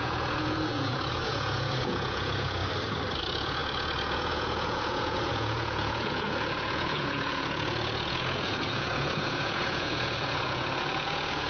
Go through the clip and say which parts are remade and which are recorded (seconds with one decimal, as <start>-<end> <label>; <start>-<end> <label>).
0.0-2.6 remade; 2.6-3.2 recorded; 3.2-11.5 remade